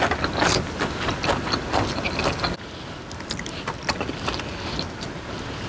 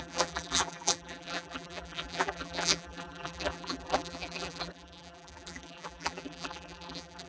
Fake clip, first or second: second